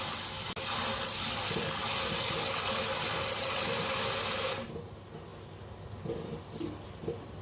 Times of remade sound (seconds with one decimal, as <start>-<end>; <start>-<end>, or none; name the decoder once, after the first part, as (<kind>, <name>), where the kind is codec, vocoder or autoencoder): none